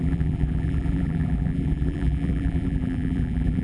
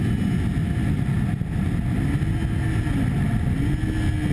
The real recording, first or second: second